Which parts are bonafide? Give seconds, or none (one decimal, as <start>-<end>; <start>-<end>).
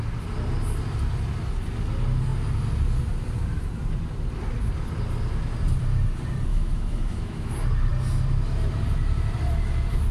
0.0-6.5; 7.5-10.1